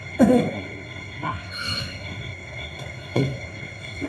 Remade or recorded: remade